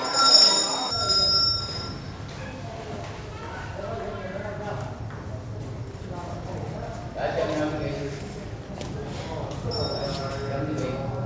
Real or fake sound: real